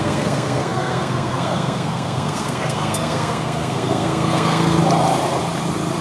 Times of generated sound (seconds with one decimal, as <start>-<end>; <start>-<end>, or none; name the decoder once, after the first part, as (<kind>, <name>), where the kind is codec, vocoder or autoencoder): 0.0-4.8 (codec, SNAC)